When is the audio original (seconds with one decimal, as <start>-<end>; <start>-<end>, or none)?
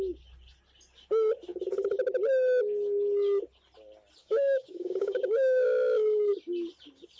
0.0-4.2; 6.3-7.2